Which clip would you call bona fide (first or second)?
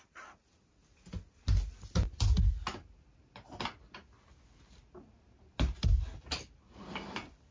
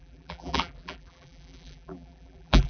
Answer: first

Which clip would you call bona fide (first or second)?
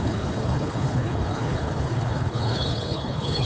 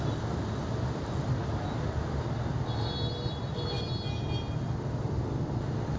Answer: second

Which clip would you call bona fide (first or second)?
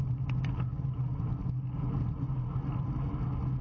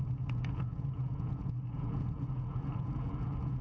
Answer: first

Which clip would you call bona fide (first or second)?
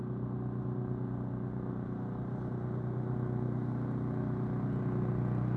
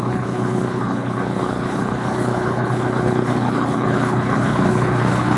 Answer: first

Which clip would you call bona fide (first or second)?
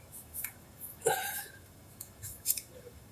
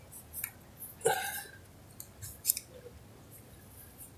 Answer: second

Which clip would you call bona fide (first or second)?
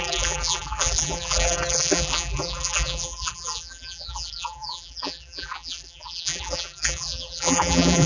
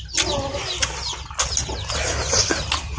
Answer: second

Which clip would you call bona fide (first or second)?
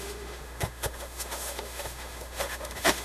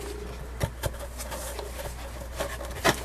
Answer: second